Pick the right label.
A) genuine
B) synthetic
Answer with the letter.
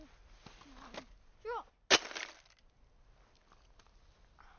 A